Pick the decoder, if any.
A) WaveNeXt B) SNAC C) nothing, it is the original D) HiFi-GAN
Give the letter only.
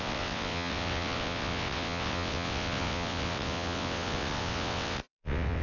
A